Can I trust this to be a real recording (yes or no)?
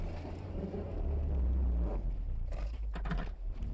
yes